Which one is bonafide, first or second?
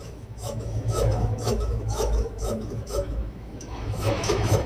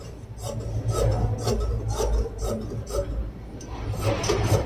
second